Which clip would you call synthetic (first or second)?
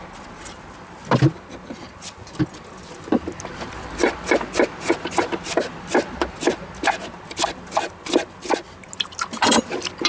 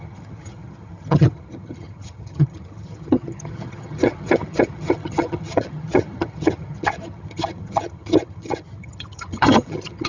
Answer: second